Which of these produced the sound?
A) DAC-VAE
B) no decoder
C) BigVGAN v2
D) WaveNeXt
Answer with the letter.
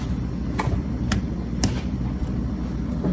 B